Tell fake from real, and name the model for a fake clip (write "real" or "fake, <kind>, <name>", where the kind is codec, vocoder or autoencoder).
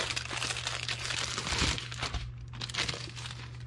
real